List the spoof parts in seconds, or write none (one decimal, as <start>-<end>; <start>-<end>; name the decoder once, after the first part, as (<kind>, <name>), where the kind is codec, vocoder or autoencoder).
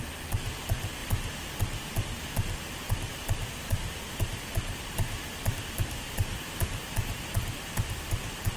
5.4-7.1 (vocoder, BigVGAN v2)